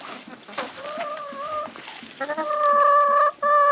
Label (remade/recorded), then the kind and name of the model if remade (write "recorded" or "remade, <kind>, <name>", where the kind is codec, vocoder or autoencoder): recorded